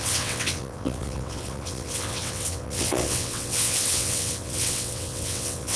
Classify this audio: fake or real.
fake